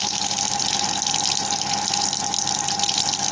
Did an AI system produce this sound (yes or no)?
no